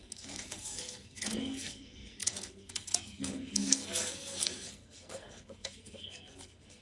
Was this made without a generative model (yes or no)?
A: no